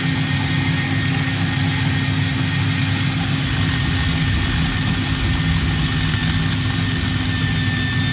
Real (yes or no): yes